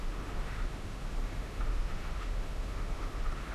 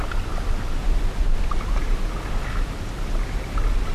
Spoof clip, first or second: first